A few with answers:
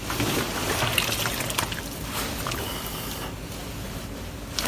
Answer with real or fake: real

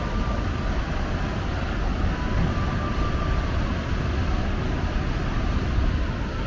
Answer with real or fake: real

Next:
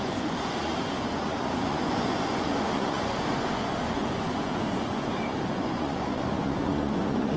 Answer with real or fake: fake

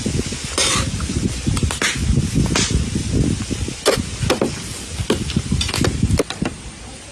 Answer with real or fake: real